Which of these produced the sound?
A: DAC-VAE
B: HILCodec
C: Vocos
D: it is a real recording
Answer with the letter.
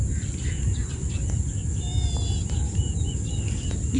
D